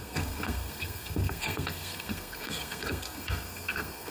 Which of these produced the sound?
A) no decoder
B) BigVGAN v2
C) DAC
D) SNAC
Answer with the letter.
D